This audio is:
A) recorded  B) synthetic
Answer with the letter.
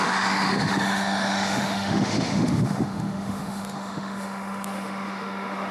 B